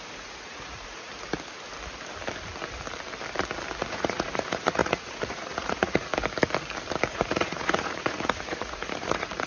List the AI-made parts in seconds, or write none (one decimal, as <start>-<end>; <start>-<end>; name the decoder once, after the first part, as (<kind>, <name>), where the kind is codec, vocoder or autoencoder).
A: 0.0-1.1 (vocoder, Vocos); 3.9-6.1; 7.1-9.5